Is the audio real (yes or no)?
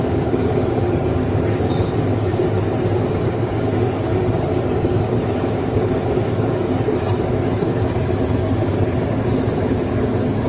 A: no